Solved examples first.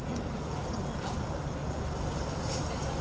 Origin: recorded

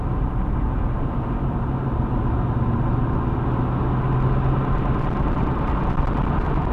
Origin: recorded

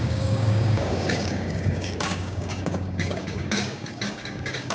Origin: remade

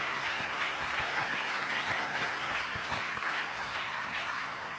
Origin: remade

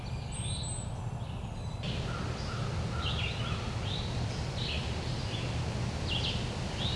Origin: recorded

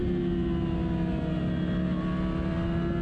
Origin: recorded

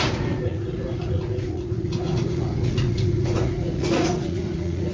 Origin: remade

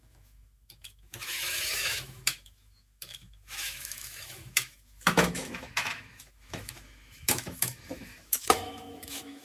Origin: remade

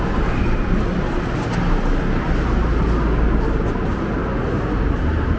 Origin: recorded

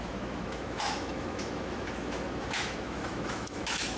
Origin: remade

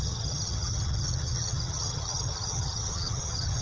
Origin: remade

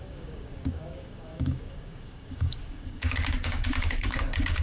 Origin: remade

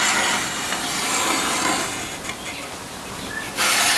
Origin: recorded